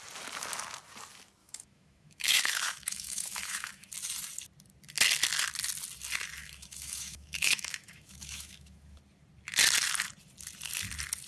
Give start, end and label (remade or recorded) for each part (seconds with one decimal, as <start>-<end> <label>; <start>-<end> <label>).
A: 0.0-1.4 recorded; 1.4-3.9 remade; 3.9-6.4 recorded; 6.4-9.0 remade; 9.0-11.3 recorded